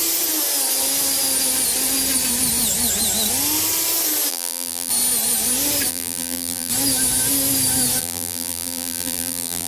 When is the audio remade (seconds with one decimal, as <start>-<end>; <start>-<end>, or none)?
4.3-4.9; 5.9-6.7; 8.0-9.7